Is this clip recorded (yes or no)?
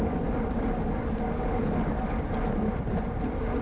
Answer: yes